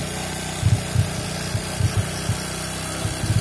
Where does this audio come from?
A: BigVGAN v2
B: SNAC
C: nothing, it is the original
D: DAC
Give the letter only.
C